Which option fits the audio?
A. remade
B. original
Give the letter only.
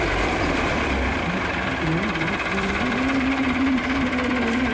A